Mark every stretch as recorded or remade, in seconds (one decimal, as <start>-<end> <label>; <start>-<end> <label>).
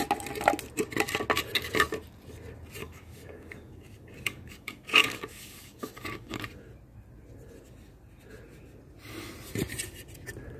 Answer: 0.0-2.8 recorded; 2.8-6.4 remade; 6.4-10.6 recorded